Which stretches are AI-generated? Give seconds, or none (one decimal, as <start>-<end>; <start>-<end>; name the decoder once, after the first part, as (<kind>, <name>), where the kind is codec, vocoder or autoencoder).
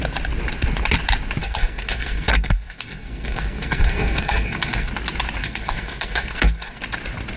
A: 1.4-4.9 (codec, SNAC); 5.4-6.8